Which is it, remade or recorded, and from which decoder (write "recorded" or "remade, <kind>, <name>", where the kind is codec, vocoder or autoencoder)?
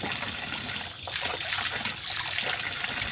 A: recorded